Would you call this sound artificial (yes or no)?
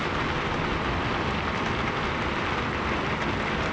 no